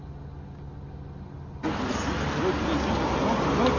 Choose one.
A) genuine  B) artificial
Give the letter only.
A